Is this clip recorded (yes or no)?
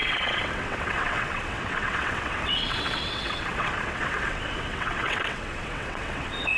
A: no